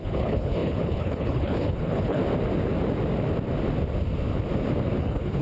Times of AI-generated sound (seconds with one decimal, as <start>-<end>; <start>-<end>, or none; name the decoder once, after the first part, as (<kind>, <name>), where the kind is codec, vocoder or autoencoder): 0.0-2.2 (codec, HILCodec); 5.0-5.4